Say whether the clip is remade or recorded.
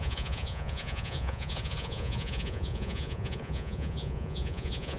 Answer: remade